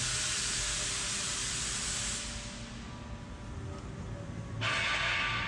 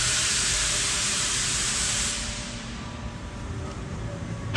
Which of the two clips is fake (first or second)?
second